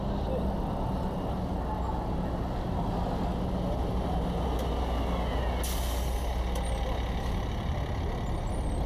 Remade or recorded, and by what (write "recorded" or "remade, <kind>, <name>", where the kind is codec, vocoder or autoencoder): recorded